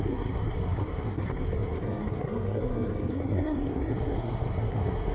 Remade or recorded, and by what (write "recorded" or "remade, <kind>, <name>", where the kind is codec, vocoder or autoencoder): remade, codec, SNAC